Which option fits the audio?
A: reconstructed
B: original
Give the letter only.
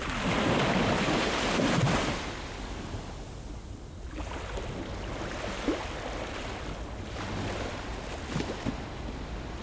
B